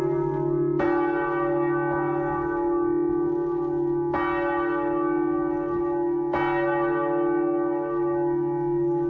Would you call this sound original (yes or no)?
yes